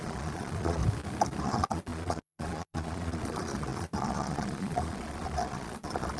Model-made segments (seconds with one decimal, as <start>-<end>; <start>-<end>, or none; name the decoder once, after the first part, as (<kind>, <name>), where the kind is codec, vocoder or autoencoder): 0.0-0.8 (vocoder, Vocos); 1.4-6.2